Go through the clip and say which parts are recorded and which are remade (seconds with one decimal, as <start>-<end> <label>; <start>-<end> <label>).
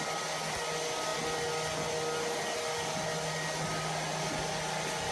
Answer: 0.0-5.1 recorded